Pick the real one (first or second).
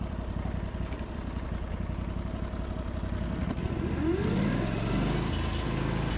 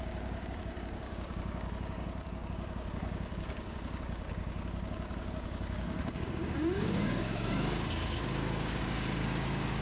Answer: first